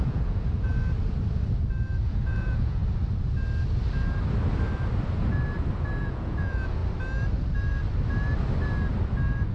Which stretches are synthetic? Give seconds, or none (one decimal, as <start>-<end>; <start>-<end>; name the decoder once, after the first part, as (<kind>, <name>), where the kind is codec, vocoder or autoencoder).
0.0-0.7 (vocoder, Vocos); 2.0-2.8; 6.0-6.8

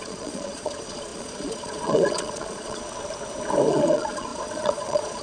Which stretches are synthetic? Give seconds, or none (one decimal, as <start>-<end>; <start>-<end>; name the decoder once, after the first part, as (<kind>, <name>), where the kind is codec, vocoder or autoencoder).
0.0-2.8 (vocoder, Vocos); 3.7-5.2

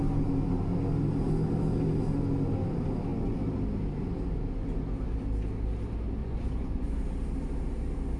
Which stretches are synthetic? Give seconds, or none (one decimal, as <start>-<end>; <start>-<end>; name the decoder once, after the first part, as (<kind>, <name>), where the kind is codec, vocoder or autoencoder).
6.2-6.9 (vocoder, Vocos)

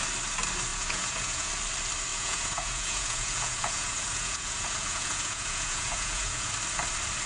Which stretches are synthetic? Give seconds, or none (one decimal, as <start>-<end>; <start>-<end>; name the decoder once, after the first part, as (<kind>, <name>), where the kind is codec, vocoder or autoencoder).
0.7-1.5 (vocoder, Vocos); 2.1-6.5

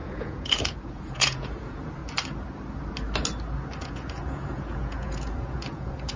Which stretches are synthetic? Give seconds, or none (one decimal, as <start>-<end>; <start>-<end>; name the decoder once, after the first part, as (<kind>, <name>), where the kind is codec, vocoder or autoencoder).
0.0-2.0 (vocoder, Vocos); 3.8-6.2

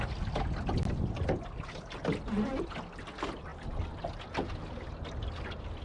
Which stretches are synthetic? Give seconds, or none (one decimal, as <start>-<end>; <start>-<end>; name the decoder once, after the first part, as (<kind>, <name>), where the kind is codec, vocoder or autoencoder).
none

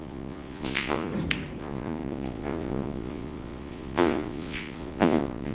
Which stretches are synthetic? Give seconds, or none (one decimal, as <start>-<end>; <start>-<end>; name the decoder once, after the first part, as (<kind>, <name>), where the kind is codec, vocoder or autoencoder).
0.0-1.1 (vocoder, Vocos); 1.6-5.5

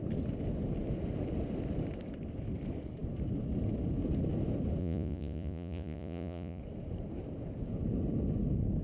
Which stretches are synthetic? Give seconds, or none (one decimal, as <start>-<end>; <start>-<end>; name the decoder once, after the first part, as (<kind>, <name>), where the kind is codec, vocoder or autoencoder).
4.8-6.6 (vocoder, Vocos)